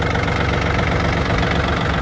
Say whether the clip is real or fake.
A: real